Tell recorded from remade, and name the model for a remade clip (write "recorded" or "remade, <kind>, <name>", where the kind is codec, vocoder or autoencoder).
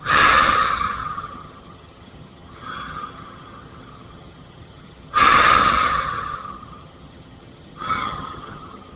remade, vocoder, HiFi-GAN